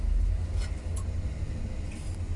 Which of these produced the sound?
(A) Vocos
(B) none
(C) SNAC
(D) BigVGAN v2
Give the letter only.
B